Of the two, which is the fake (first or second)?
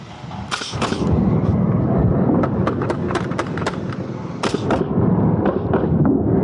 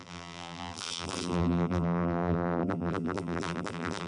second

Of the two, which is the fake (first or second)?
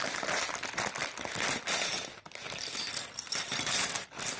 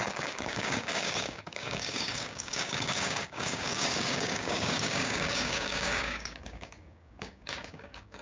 second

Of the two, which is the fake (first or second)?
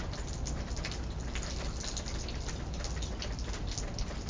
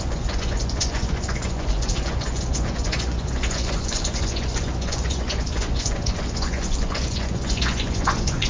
second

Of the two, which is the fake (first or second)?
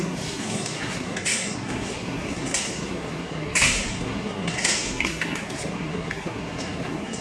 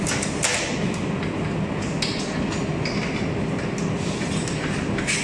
first